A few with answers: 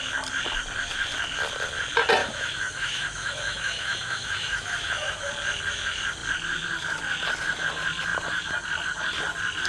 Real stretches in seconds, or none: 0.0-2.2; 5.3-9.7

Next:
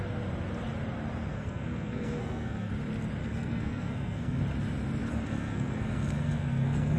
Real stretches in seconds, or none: 0.0-1.3; 2.7-3.2; 4.4-5.1

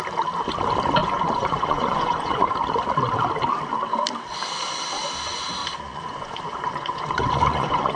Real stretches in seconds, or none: 0.0-1.0; 2.5-5.6

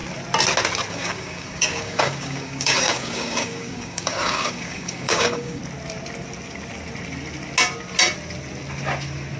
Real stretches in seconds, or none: 0.0-0.9; 5.6-9.4

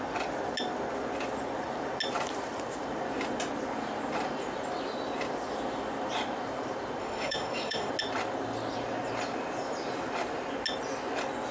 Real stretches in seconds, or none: 0.0-7.0; 7.9-11.5

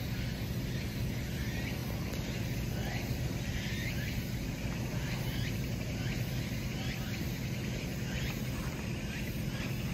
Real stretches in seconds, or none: 0.0-9.9

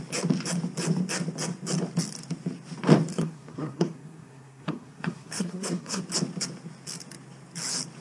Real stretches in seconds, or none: 0.0-3.1; 6.0-8.0